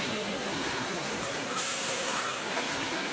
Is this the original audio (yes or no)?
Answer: no